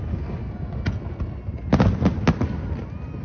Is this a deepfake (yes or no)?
no